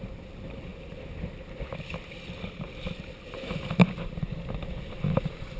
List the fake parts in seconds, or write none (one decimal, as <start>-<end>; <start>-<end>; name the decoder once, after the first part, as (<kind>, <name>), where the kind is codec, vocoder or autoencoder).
none